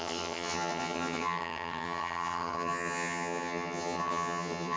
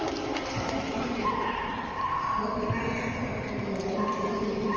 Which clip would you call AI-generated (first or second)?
first